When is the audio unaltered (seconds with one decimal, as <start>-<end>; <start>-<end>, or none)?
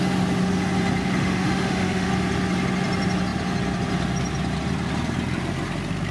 0.0-1.2; 2.1-6.1